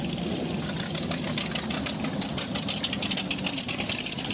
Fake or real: real